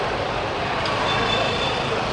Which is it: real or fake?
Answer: fake